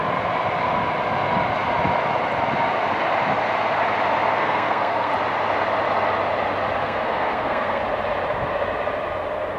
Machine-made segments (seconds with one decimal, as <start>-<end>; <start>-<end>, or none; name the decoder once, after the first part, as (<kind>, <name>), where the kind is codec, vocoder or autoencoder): 4.4-5.1 (codec, SNAC); 6.8-7.8